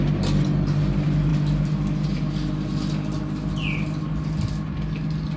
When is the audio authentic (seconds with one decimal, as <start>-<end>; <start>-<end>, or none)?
0.0-5.4

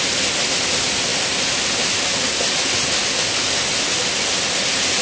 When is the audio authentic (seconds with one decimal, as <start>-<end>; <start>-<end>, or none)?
0.0-5.0

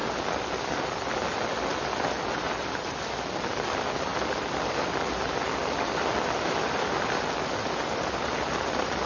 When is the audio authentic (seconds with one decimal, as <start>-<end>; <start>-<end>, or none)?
0.0-9.1

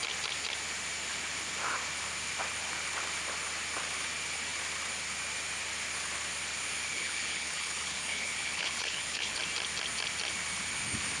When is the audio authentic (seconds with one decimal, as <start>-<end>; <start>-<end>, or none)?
0.0-6.9; 9.4-11.2

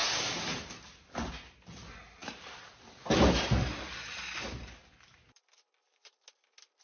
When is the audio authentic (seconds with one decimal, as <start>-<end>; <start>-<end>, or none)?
0.0-6.8

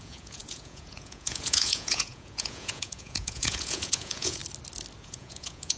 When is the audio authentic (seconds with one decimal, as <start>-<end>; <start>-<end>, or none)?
4.4-5.0

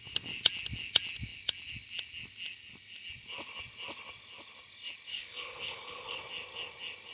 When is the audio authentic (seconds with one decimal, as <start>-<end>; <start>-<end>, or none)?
0.0-5.1; 6.2-7.1